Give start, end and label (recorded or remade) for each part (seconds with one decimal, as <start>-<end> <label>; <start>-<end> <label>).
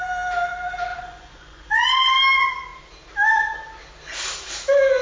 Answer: 0.0-0.9 recorded; 0.9-2.2 remade; 2.2-5.0 recorded